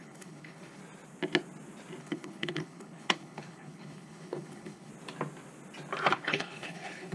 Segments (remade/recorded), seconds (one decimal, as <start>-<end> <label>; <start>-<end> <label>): 0.0-0.8 remade; 0.8-2.0 recorded; 2.0-4.9 remade; 4.9-6.1 recorded; 6.1-7.1 remade